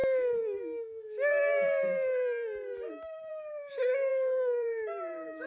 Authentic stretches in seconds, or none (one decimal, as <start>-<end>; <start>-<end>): 0.0-3.3